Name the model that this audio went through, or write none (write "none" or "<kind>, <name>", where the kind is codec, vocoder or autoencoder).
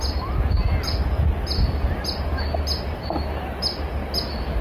none